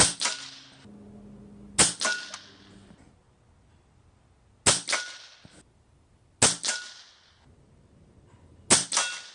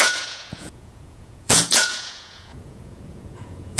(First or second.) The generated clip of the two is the second